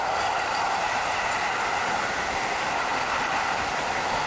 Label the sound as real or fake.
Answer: real